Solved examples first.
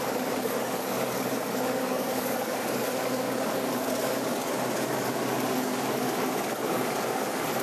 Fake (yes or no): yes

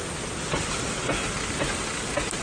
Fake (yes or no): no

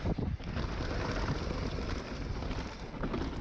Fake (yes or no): no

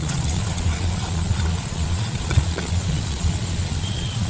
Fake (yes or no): yes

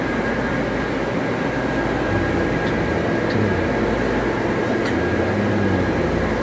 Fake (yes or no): no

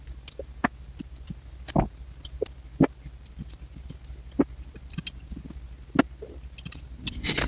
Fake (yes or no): no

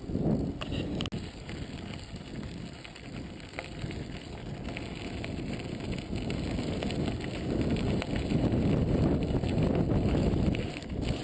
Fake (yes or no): no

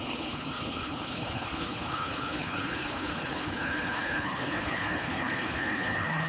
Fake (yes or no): yes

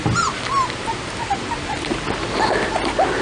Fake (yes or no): no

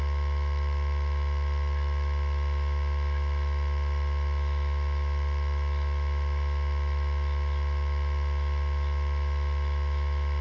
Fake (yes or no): yes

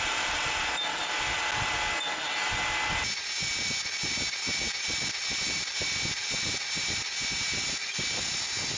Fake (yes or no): no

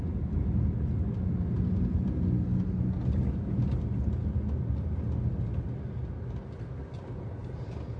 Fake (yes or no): no